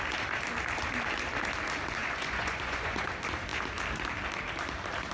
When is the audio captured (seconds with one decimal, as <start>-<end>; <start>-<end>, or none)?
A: 0.0-2.0; 3.1-5.1